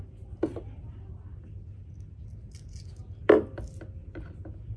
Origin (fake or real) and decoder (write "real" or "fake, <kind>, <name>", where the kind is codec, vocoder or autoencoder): real